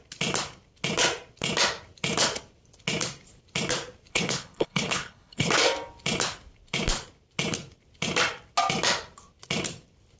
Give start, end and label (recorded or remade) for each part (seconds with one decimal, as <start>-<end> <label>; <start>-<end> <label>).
0.0-4.1 recorded; 4.1-5.5 remade; 5.5-10.2 recorded

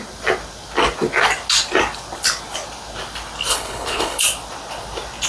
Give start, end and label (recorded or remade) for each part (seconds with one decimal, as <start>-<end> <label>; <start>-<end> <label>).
0.0-3.5 recorded; 3.5-4.2 remade; 4.2-5.3 recorded

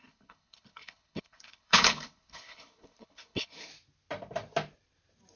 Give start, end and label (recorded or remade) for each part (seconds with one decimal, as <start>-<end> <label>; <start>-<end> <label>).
0.0-3.7 remade; 3.7-5.4 recorded

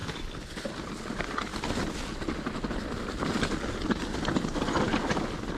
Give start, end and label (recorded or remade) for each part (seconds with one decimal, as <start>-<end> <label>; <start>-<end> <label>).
0.0-5.6 recorded

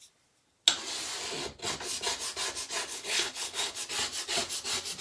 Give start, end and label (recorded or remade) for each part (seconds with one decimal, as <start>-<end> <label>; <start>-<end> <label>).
0.0-2.9 recorded; 2.9-3.8 remade; 3.8-5.0 recorded